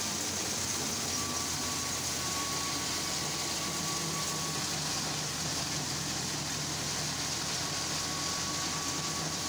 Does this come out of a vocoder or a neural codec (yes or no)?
no